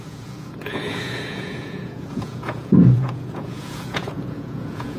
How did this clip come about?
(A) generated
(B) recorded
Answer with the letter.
A